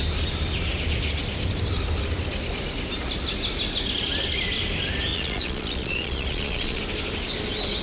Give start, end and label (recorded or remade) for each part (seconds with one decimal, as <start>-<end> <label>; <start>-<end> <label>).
0.0-5.1 recorded; 5.1-6.8 remade; 6.8-7.8 recorded